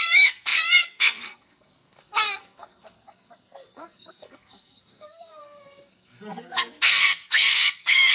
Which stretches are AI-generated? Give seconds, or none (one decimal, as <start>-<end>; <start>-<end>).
0.0-8.1